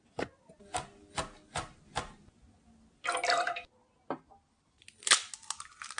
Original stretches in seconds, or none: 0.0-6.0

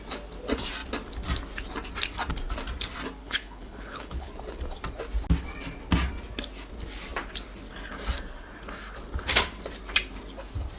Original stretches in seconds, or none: 0.0-3.2; 4.3-10.8